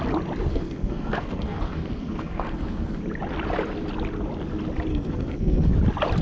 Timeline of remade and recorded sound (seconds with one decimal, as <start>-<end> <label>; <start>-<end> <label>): 0.0-0.5 recorded; 0.5-3.0 remade; 3.0-4.9 recorded; 4.9-5.7 remade; 5.7-6.2 recorded